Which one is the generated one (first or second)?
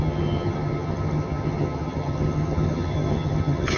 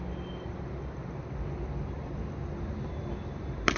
first